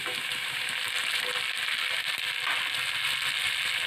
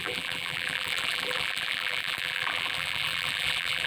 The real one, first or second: first